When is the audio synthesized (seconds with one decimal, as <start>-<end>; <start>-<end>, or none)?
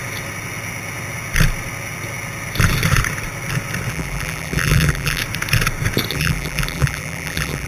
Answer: 3.9-5.2; 6.1-7.7